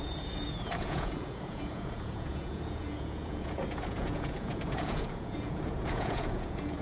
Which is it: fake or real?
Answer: fake